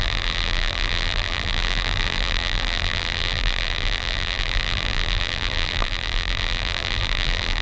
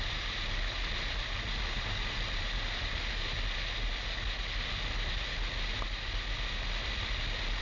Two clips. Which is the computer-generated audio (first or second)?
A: first